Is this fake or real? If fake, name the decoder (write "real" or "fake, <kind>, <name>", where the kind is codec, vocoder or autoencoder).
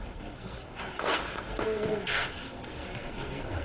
fake, codec, SNAC